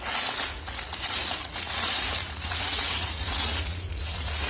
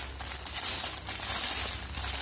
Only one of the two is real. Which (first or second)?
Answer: second